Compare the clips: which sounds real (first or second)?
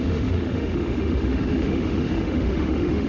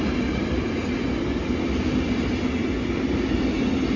second